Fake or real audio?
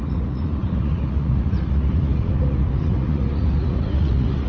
fake